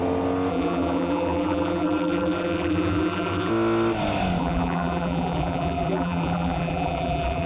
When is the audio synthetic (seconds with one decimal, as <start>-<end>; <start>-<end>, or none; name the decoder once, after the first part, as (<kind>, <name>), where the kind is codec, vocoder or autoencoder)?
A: 0.5-3.5 (vocoder, BigVGAN v2); 4.4-7.5